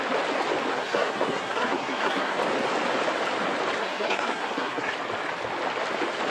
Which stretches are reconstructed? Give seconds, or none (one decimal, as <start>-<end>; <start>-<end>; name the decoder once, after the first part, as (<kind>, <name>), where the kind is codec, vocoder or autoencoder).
0.7-2.4 (codec, SNAC); 3.8-4.9

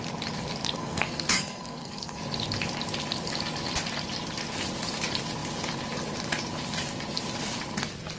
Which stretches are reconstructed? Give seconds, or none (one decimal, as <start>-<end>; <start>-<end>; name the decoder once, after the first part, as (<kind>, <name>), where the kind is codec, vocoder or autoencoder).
0.6-2.2 (codec, SNAC)